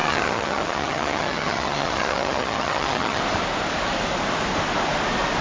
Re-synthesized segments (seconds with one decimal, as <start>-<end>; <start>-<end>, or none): 0.0-3.2